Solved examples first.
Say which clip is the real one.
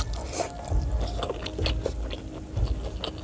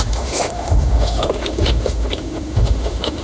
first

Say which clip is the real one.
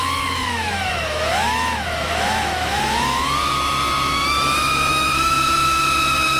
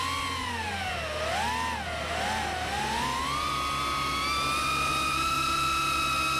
second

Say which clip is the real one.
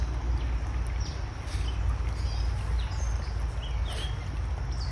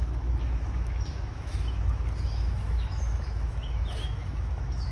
first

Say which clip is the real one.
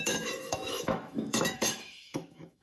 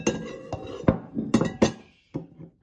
second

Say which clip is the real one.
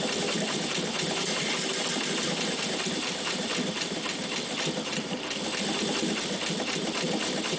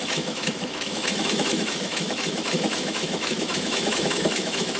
first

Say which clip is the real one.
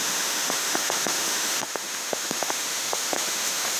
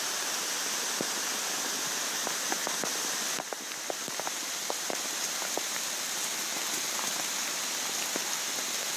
second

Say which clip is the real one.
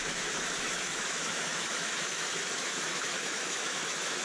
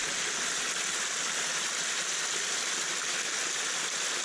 second